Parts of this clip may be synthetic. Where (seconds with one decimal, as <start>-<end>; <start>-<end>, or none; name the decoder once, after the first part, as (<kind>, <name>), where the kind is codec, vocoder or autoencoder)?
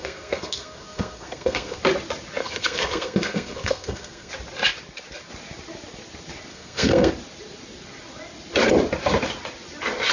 0.0-1.8 (codec, SNAC); 2.4-4.3; 6.5-7.1